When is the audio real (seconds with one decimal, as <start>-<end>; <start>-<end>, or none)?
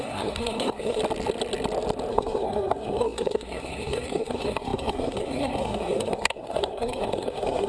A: 1.0-2.1